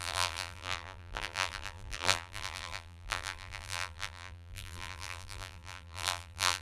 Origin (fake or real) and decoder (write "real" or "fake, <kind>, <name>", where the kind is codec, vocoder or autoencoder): fake, vocoder, BigVGAN v2